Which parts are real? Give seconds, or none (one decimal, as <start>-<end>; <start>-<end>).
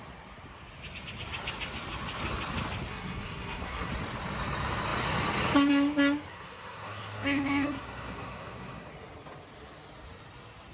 0.0-2.9; 3.9-6.3; 8.9-10.7